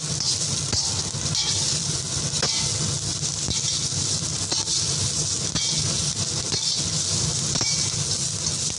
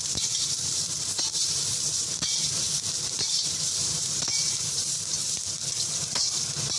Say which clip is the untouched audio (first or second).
first